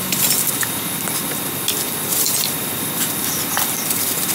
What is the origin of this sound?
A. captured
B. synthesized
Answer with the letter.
A